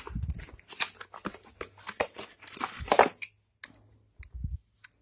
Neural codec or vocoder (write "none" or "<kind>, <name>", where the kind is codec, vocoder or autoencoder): none